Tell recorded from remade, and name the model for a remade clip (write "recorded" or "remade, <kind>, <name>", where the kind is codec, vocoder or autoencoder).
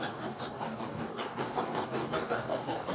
remade, codec, DAC